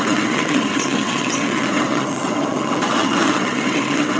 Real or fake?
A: fake